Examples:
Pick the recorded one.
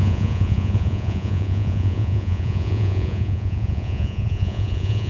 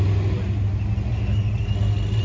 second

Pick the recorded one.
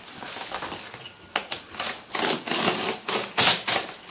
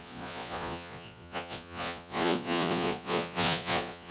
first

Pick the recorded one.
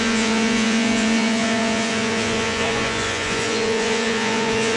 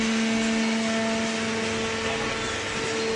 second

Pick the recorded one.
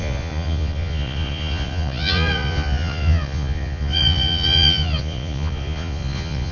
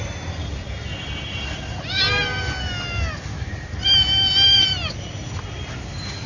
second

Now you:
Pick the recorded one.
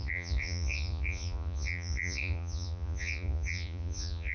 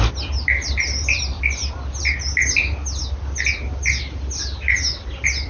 second